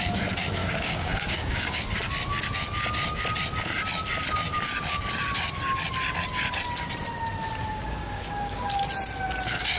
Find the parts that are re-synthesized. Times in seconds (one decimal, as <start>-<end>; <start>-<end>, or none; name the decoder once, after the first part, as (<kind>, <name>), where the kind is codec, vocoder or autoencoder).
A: 0.6-1.8 (codec, DAC); 7.7-8.7